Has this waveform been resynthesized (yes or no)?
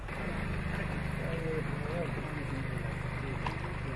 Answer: no